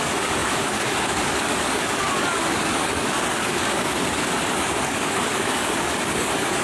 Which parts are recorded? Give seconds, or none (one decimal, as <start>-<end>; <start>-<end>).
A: none